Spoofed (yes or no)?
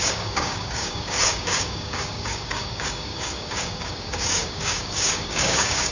yes